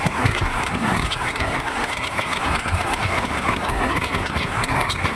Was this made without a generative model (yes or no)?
no